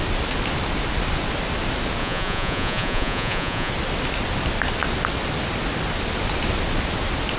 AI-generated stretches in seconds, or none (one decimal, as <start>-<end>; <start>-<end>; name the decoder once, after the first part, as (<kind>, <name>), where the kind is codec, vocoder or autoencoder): 2.0-3.7 (vocoder, Vocos)